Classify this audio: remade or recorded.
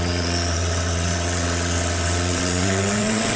remade